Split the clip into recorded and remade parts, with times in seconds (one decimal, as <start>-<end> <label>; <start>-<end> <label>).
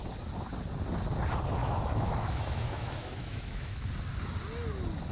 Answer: 0.0-1.6 recorded; 1.6-3.9 remade; 3.9-5.1 recorded